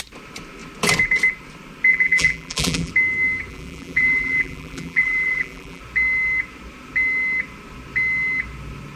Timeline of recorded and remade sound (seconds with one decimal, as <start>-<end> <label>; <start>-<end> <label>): 0.0-1.9 recorded; 1.9-2.9 remade; 2.9-3.5 recorded; 3.5-5.8 remade; 5.8-9.0 recorded